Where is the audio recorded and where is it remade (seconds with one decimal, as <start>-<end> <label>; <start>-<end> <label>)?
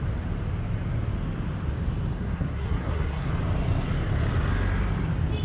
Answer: 0.0-2.1 recorded; 2.1-3.3 remade; 3.3-5.4 recorded